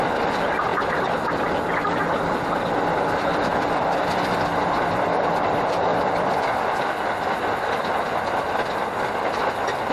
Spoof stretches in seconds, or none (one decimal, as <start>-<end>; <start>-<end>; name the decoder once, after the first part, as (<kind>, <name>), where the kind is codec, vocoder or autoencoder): none